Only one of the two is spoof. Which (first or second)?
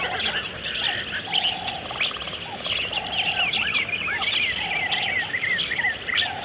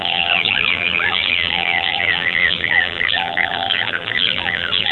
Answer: second